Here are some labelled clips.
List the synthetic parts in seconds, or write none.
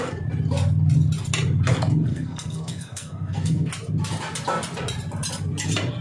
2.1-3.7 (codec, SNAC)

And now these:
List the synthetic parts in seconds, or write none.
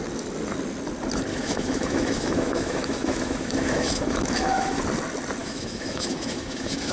1.3-4.8 (autoencoder, DAC-VAE); 5.4-6.9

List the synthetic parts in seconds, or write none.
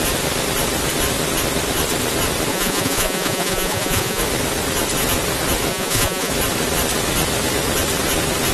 2.5-4.2 (vocoder, Vocos); 5.7-6.3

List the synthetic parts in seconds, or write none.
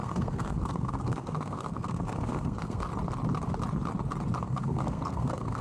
0.0-2.9 (codec, SNAC); 4.4-5.6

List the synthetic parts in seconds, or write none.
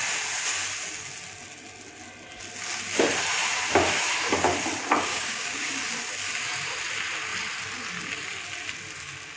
5.1-5.7 (codec, DAC)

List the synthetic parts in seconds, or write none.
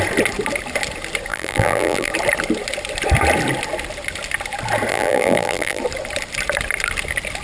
1.3-2.1 (vocoder, BigVGAN v2); 4.9-5.8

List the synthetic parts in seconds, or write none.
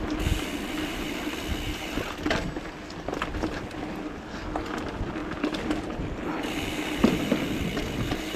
none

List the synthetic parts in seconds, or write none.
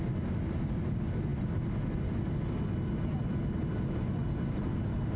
none